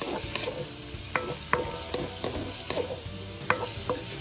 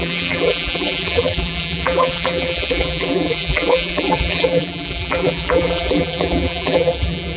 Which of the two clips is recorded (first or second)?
first